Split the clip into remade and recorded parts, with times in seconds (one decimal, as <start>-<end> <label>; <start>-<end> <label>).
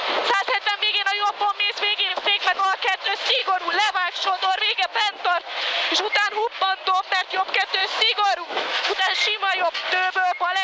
0.0-2.1 recorded; 2.1-2.6 remade; 2.6-3.4 recorded; 3.4-4.6 remade; 4.6-7.8 recorded; 7.8-9.0 remade; 9.0-10.6 recorded